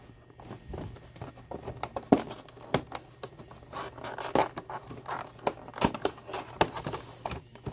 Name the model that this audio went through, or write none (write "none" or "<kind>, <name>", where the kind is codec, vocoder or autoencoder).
none